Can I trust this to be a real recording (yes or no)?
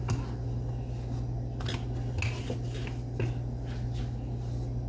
yes